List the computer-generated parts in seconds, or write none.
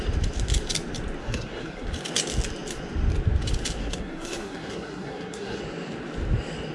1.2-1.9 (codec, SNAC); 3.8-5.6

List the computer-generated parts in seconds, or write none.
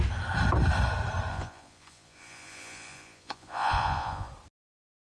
1.3-4.3 (vocoder, Vocos)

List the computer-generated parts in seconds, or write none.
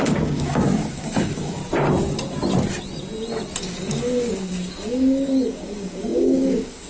0.0-1.6 (codec, DAC); 3.6-6.9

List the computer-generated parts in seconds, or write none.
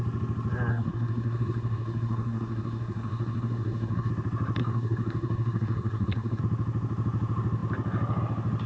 0.7-4.1 (codec, SNAC); 4.6-6.4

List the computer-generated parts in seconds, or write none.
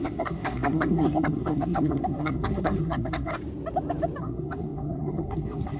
0.0-3.3 (codec, SNAC); 4.2-5.8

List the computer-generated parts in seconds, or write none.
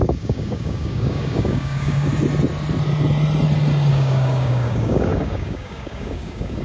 0.0-2.1 (codec, DAC); 3.9-6.6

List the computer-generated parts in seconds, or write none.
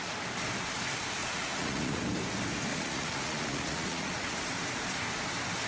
1.2-2.0 (vocoder, Vocos); 2.7-4.4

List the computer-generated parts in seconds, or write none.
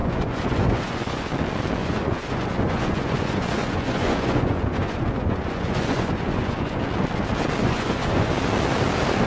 0.0-1.3 (vocoder, Vocos); 1.8-6.8; 7.6-8.3